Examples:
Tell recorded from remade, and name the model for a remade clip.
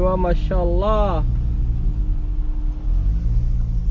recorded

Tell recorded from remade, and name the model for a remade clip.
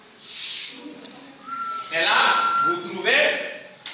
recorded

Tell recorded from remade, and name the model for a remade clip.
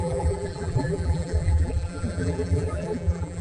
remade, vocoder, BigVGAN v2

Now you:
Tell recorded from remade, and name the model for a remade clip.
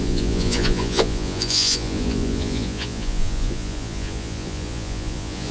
remade, vocoder, Vocos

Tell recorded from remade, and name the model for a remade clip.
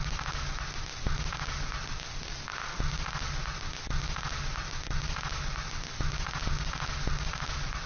recorded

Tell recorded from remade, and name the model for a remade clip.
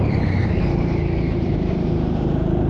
remade, vocoder, BigVGAN v2